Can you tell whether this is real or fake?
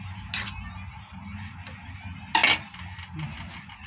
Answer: real